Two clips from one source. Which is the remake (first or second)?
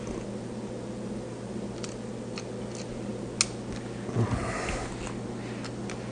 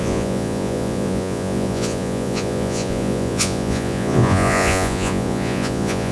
second